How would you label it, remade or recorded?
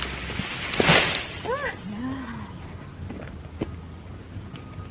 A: recorded